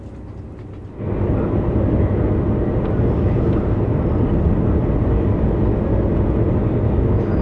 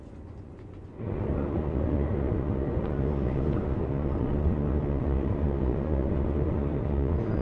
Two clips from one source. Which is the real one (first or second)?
first